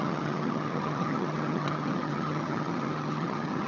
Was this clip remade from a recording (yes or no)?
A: yes